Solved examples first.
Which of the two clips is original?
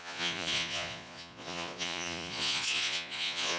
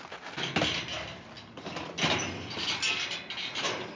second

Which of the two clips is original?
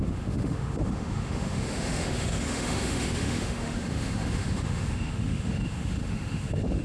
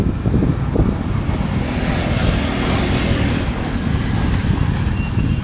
second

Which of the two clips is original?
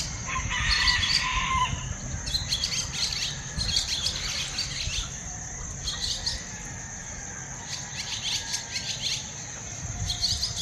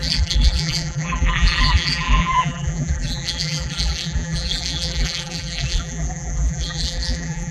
first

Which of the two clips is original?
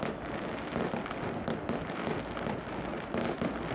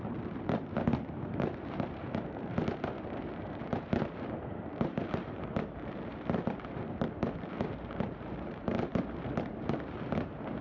first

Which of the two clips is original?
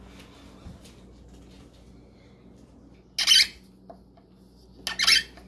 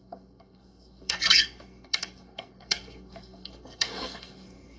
first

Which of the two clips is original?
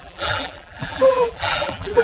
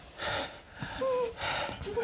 second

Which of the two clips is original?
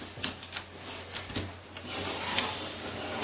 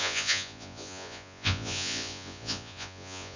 first